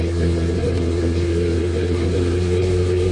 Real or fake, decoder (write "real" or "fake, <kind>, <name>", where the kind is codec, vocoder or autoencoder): fake, codec, SNAC